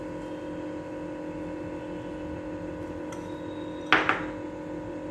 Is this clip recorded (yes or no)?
yes